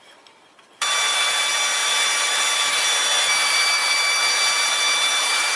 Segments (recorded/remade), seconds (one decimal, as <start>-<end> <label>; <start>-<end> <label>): 0.0-5.6 recorded